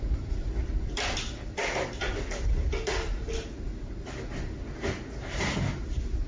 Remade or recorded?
recorded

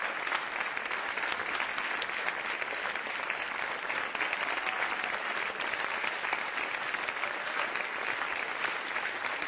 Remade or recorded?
recorded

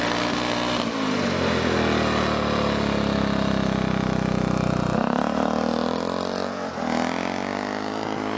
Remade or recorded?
recorded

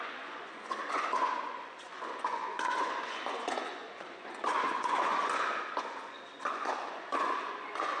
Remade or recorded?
remade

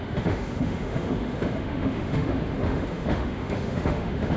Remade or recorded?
remade